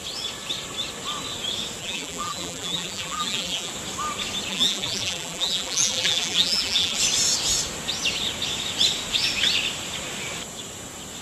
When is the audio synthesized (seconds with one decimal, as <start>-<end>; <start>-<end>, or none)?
1.8-3.7; 4.5-7.0

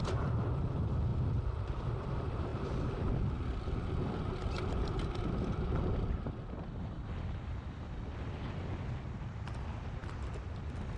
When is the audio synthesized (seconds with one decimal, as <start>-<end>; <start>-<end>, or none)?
0.0-1.1; 1.7-11.0

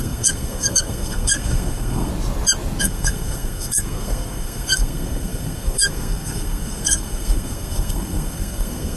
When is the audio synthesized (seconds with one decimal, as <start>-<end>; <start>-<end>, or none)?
0.0-2.1; 2.8-9.0